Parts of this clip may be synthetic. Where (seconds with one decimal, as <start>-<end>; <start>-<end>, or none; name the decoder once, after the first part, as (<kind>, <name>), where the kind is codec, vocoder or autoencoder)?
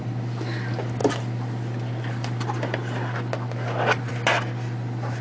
none